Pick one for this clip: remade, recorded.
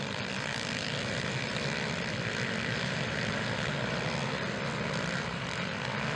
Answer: remade